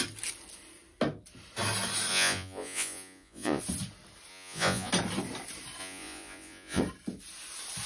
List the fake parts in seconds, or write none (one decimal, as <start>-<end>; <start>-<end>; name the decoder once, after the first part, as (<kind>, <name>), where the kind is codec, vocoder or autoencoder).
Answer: 2.1-3.6 (vocoder, Vocos); 4.3-4.9; 5.8-6.8

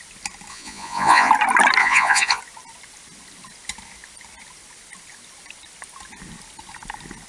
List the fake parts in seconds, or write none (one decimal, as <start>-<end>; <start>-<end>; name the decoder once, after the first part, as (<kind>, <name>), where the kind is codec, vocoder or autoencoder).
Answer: 0.5-1.3 (vocoder, Vocos); 1.8-2.4

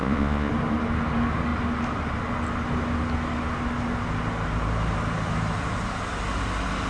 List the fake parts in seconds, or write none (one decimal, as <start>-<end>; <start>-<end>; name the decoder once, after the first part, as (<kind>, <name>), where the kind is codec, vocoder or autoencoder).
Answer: 0.0-0.5 (vocoder, Vocos)

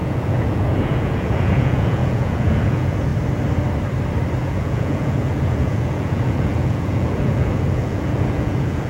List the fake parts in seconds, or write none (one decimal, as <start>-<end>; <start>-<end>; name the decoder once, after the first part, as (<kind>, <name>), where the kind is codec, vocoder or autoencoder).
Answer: 0.0-3.1 (vocoder, Vocos); 4.4-8.9

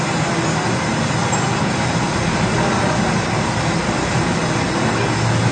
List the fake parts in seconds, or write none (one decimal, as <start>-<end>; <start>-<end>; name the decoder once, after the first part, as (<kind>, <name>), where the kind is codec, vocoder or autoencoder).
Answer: none